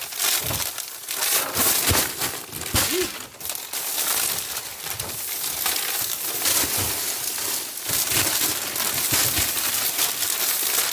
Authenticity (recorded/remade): recorded